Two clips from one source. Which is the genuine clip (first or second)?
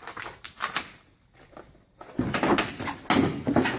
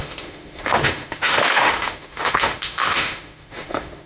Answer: first